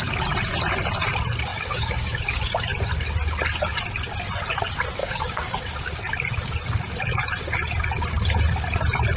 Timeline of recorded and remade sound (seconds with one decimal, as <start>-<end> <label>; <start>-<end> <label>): 0.0-1.5 recorded; 1.5-2.4 remade; 2.4-5.0 recorded; 5.0-5.6 remade; 5.6-9.2 recorded